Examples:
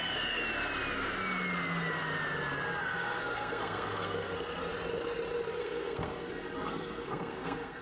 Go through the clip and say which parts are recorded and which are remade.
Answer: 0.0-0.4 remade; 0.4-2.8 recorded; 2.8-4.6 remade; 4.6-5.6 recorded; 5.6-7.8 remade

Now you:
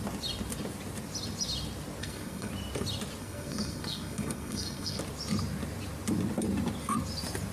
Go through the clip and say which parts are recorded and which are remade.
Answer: 0.0-2.0 recorded; 2.0-2.5 remade; 2.5-3.2 recorded; 3.2-5.0 remade; 5.0-7.5 recorded

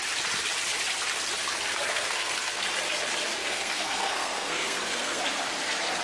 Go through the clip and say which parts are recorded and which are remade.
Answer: 0.0-1.9 recorded; 1.9-2.6 remade; 2.6-3.4 recorded; 3.4-5.2 remade; 5.2-6.0 recorded

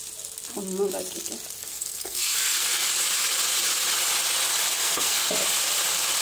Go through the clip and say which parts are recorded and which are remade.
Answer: 0.0-1.6 recorded; 1.6-2.9 remade; 2.9-4.8 recorded; 4.8-5.3 remade; 5.3-6.2 recorded

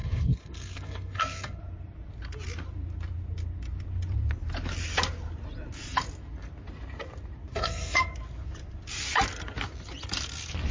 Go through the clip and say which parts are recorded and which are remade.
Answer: 0.0-1.6 remade; 1.6-7.5 recorded; 7.5-8.1 remade; 8.1-10.7 recorded

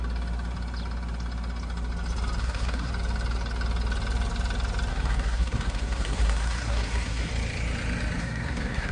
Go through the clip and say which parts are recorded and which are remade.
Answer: 0.0-2.4 recorded; 2.4-2.9 remade; 2.9-4.9 recorded; 4.9-7.3 remade; 7.3-8.2 recorded; 8.2-8.9 remade

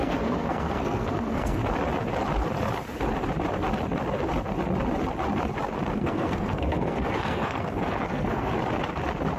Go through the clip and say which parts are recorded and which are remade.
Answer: 0.0-1.6 remade; 1.6-5.9 recorded; 5.9-8.5 remade; 8.5-9.4 recorded

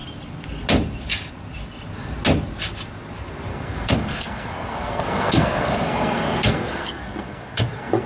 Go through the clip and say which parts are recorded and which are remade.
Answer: 0.0-3.5 recorded; 3.5-8.1 remade